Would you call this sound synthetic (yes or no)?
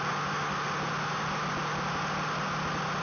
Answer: no